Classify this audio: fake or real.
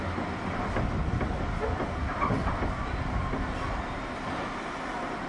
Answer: real